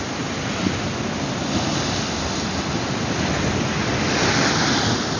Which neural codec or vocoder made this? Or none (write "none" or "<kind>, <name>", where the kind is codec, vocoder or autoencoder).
none